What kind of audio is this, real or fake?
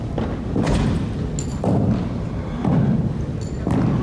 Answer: real